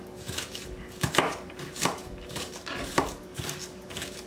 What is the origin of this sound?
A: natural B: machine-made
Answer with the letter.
B